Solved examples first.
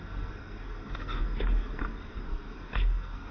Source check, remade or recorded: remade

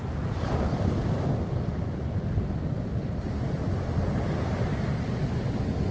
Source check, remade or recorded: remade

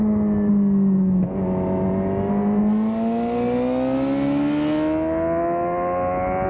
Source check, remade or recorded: recorded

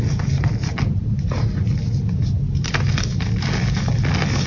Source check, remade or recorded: recorded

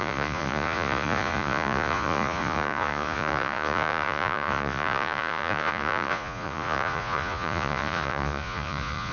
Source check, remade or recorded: remade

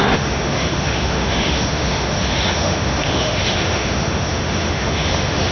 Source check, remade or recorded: remade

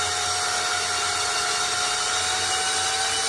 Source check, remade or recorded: recorded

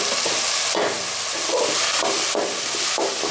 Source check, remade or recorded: recorded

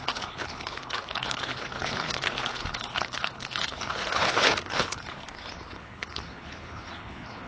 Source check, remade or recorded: remade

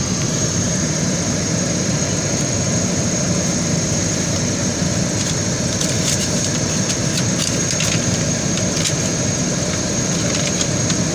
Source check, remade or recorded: remade